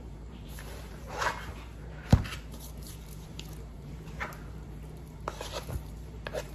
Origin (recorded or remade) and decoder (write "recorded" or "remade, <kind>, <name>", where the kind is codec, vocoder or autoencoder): remade, vocoder, BigVGAN v2